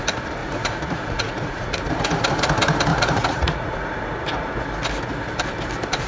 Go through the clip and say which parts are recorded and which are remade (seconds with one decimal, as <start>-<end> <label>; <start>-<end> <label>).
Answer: 0.0-0.4 recorded; 0.4-1.8 remade; 1.8-2.9 recorded; 2.9-4.0 remade; 4.0-6.1 recorded